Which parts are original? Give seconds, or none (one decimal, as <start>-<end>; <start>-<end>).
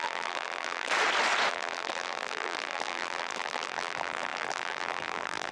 0.9-1.5